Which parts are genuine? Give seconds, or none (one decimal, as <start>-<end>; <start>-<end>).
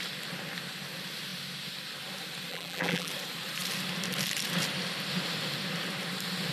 0.0-2.5; 3.1-6.5